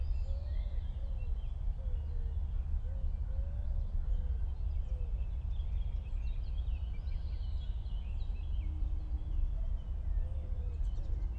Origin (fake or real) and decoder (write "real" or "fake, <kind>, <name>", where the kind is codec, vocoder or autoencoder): real